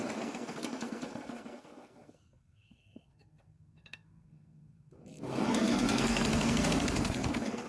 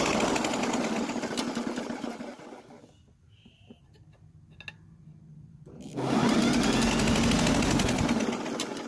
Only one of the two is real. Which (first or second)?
second